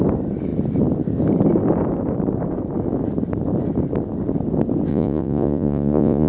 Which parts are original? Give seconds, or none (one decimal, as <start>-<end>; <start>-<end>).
0.0-4.9